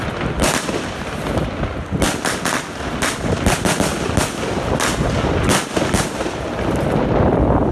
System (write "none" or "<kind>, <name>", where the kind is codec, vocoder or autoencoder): none